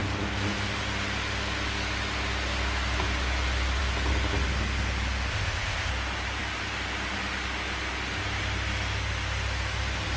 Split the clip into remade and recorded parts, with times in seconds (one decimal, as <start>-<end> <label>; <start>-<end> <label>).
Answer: 0.0-5.3 recorded; 5.3-5.9 remade; 5.9-10.2 recorded